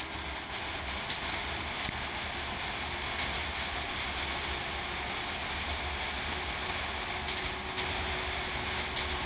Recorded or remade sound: recorded